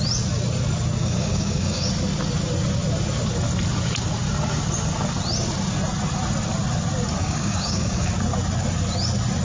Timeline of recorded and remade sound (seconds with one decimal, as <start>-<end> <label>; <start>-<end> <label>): 0.0-1.0 recorded; 1.0-1.9 remade; 1.9-7.2 recorded; 7.2-8.1 remade; 8.1-9.4 recorded